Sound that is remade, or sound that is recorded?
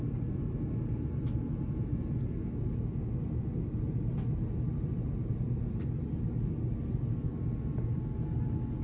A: recorded